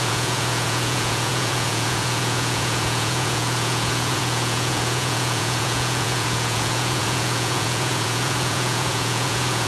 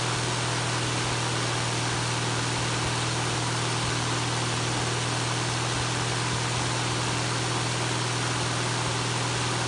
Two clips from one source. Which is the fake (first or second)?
first